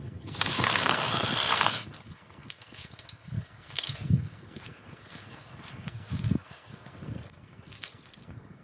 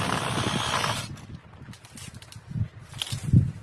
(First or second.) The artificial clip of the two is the first